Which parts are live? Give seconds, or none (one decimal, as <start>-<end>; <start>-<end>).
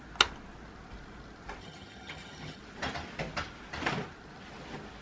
0.0-1.6; 2.6-5.0